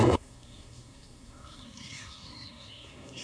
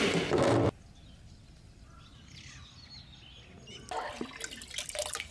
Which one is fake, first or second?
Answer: first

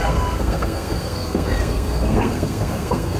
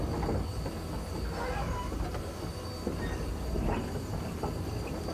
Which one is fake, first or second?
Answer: first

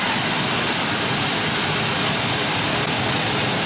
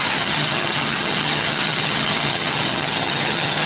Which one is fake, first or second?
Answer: second